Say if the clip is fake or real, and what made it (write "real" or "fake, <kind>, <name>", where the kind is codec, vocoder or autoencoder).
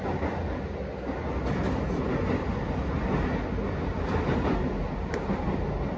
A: real